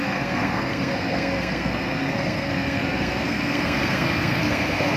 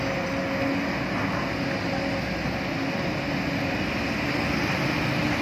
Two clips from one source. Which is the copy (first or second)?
first